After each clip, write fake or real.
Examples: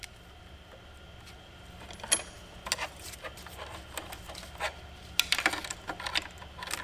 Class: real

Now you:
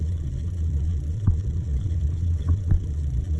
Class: fake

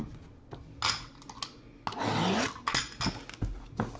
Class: real